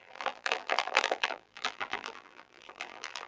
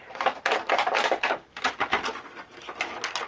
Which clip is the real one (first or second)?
second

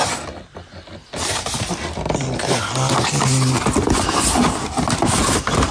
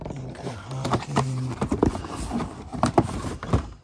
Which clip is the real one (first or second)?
first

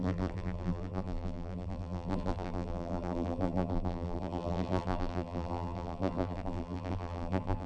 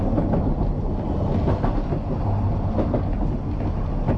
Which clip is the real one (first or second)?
second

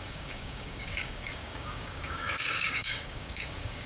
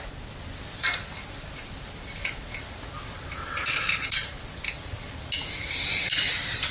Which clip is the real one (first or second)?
second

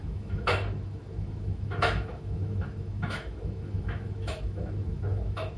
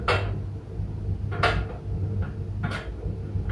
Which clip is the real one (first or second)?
second